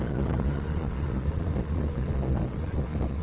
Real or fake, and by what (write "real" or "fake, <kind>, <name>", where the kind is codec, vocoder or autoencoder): fake, vocoder, Vocos